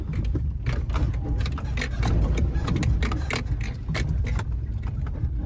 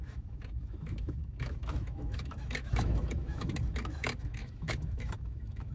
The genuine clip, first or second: first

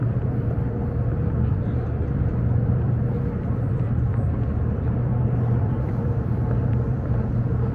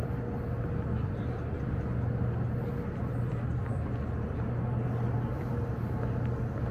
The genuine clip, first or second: second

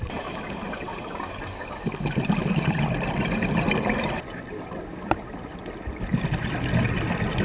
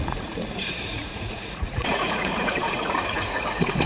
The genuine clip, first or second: first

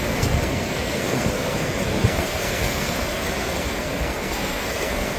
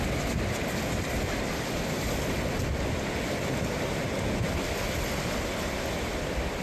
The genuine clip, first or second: second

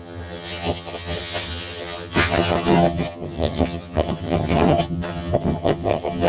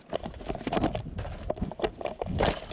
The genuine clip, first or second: second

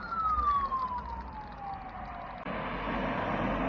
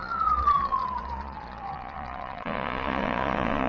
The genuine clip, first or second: first